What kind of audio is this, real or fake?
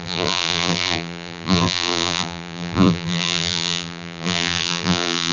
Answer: fake